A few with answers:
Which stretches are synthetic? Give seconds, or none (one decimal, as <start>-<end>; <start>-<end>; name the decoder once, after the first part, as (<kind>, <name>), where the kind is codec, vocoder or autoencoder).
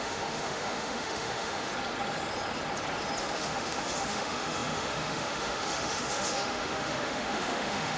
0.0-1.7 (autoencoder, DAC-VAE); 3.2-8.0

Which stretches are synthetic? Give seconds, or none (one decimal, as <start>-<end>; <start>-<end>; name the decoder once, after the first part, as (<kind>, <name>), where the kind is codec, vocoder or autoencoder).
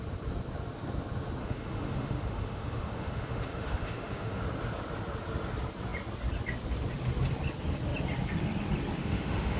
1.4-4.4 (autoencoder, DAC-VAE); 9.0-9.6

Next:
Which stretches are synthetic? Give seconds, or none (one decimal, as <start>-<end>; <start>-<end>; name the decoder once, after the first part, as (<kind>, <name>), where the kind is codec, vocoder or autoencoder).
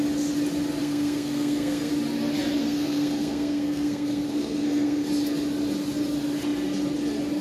0.8-1.9 (codec, SNAC); 2.6-5.1